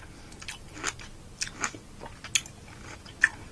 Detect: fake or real real